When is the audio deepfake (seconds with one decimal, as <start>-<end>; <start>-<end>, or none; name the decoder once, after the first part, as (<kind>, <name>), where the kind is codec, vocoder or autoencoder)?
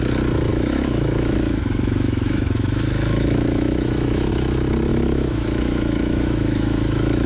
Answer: 0.5-4.3 (autoencoder, DAC-VAE); 4.9-7.3